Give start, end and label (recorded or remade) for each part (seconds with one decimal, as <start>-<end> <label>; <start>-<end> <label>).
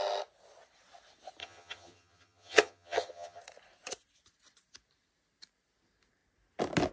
0.0-1.4 recorded; 1.4-3.4 remade; 3.4-6.9 recorded